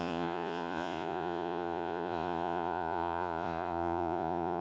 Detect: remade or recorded remade